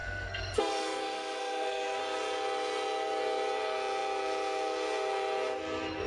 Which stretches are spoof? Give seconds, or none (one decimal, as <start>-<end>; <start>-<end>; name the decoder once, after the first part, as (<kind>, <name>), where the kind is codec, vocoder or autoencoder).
0.0-2.0 (codec, SNAC)